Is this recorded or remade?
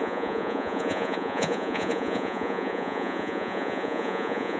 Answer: remade